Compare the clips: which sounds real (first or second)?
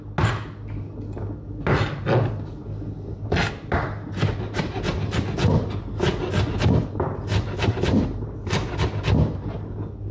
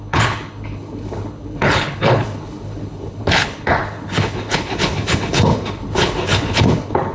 first